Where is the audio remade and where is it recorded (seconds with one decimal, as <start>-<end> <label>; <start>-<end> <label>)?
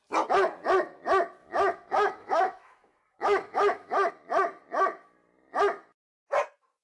0.0-1.4 recorded; 1.4-4.1 remade; 4.1-6.8 recorded